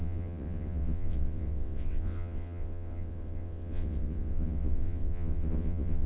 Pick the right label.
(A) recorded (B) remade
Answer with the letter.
B